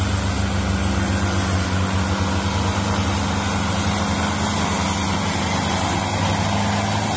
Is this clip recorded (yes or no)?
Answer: yes